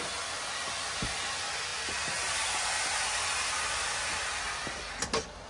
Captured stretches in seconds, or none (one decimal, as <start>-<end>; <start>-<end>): 0.0-5.5